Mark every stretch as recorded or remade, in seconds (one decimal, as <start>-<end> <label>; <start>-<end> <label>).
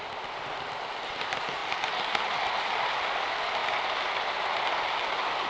0.0-5.5 recorded